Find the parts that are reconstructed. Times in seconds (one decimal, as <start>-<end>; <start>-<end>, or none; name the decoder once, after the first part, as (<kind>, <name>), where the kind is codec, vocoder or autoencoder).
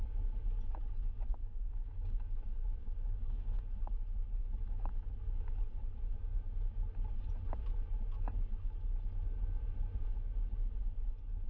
1.4-2.1 (codec, DAC); 2.8-3.6